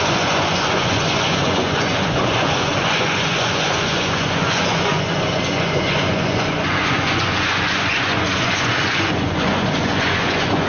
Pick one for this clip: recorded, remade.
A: remade